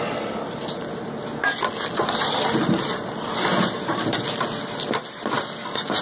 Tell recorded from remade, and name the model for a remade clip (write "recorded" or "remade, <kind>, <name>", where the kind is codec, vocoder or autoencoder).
recorded